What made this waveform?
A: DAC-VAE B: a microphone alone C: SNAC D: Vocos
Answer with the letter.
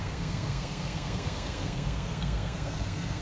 C